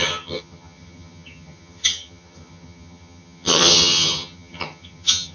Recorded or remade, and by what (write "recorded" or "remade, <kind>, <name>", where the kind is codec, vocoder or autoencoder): remade, vocoder, HiFi-GAN